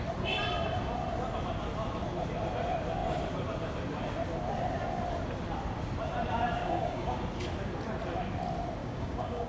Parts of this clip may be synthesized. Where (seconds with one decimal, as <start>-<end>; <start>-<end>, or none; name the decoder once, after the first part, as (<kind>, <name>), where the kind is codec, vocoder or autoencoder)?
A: 6.6-7.2 (codec, DAC); 8.8-9.5